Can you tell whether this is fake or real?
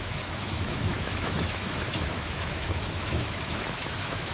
fake